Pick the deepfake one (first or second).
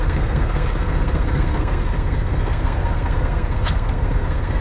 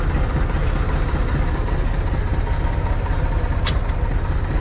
first